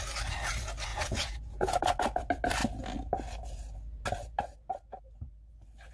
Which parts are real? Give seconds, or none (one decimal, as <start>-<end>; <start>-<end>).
0.0-0.9; 1.8-5.9